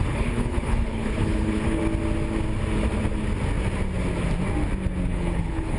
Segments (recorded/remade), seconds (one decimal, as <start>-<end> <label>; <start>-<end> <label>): 0.0-1.8 remade; 1.8-5.1 recorded; 5.1-5.8 remade